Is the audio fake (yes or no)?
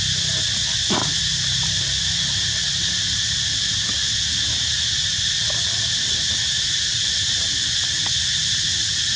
no